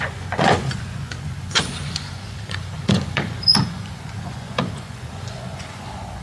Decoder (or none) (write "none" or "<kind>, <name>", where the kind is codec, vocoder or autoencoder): vocoder, Vocos